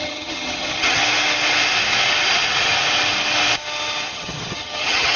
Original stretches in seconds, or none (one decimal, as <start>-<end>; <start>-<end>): 1.0-4.1